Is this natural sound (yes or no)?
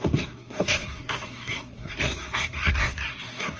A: no